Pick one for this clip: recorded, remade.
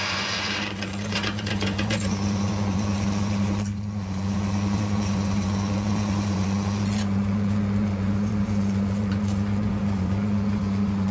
remade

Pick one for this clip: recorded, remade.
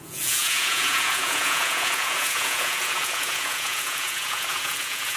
remade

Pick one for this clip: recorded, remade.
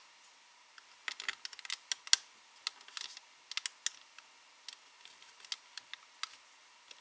recorded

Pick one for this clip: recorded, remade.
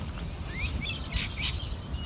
recorded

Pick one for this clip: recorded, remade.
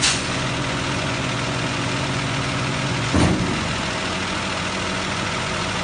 remade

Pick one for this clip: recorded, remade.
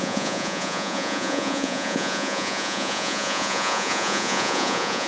remade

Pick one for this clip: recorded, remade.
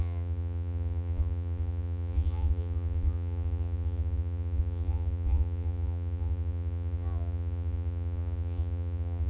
remade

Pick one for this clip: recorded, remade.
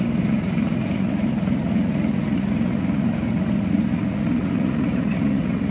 remade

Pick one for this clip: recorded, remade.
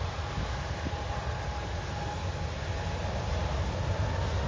recorded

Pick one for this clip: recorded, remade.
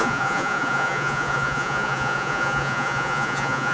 remade